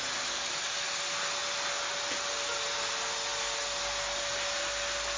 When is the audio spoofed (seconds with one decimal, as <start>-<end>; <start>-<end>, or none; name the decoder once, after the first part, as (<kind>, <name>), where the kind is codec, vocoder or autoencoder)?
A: none

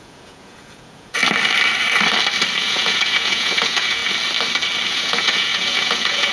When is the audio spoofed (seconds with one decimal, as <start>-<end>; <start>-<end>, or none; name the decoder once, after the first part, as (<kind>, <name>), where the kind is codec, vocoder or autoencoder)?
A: 0.0-1.2 (vocoder, Vocos); 2.6-4.0; 4.9-6.3

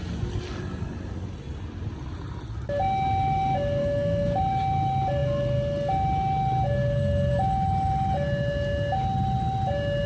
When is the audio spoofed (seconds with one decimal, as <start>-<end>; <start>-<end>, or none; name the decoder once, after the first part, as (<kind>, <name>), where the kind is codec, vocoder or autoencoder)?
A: 3.8-4.4 (autoencoder, DAC-VAE)

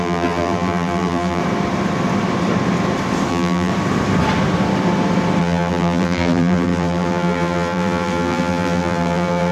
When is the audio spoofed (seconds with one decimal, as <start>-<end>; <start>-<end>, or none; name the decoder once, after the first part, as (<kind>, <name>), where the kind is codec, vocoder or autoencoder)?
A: 0.0-1.4 (vocoder, BigVGAN v2); 3.3-3.7; 5.4-9.5